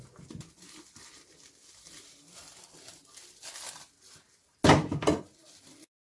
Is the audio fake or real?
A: real